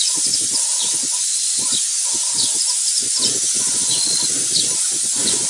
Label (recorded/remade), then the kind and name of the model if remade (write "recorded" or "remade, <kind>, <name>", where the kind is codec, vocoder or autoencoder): remade, vocoder, Vocos